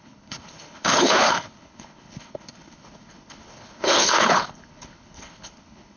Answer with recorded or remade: remade